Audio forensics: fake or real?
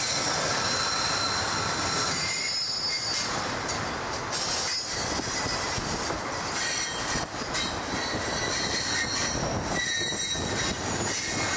real